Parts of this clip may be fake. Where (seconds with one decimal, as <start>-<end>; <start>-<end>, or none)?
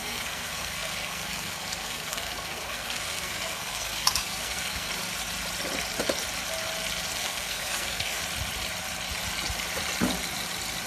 0.0-4.9; 7.1-8.2